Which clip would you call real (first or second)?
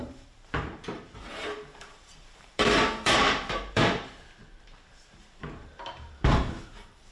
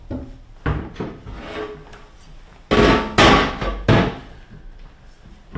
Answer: second